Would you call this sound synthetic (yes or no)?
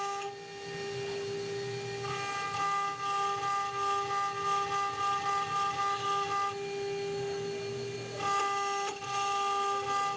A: no